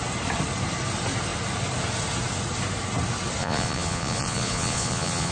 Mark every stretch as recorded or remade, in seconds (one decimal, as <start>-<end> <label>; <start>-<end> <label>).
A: 0.0-3.4 recorded; 3.4-5.3 remade